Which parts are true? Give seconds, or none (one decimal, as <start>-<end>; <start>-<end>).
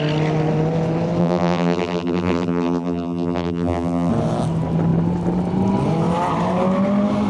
0.0-1.2; 4.1-7.3